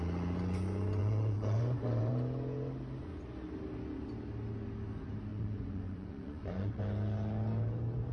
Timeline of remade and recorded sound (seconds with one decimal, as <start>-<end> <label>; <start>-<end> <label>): 0.0-1.0 recorded; 1.0-2.1 remade; 2.1-5.3 recorded; 5.3-6.8 remade; 6.8-8.1 recorded